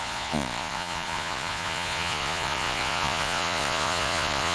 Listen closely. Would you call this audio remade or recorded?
remade